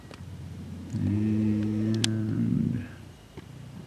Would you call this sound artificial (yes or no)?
no